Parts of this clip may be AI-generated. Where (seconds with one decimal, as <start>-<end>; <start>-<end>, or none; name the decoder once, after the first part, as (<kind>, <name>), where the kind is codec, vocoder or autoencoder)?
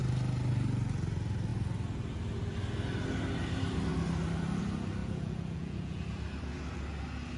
5.0-6.0 (vocoder, Vocos)